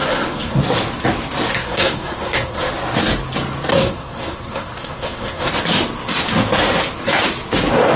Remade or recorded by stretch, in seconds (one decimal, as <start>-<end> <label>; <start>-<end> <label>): 0.0-0.6 remade; 0.6-1.5 recorded; 1.5-2.7 remade; 2.7-3.7 recorded; 3.7-5.5 remade; 5.5-8.0 recorded